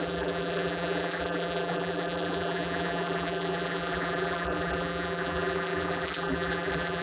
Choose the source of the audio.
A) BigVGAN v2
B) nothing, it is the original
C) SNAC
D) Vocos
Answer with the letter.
A